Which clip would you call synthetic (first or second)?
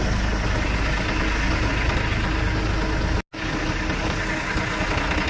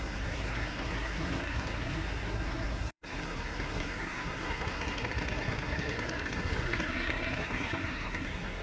second